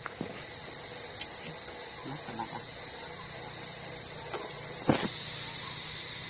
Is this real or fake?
real